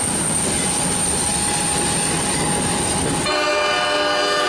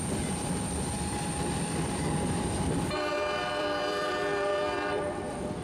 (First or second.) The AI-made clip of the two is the second